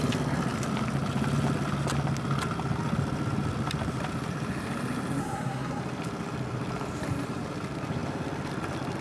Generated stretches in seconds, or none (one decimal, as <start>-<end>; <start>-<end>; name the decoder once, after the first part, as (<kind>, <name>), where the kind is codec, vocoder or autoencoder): 5.2-5.8 (codec, SNAC)